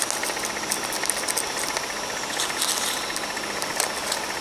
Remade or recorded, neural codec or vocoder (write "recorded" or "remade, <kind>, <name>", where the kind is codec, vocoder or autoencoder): recorded